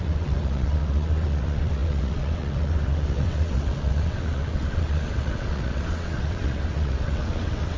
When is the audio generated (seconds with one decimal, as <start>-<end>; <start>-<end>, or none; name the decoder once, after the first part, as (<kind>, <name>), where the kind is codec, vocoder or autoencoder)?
0.0-7.8 (vocoder, WaveNeXt)